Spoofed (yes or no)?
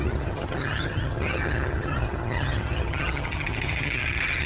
yes